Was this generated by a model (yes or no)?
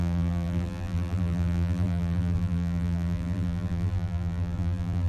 yes